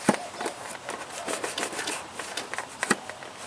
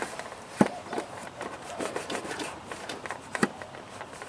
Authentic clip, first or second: first